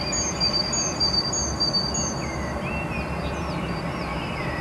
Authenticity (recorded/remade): recorded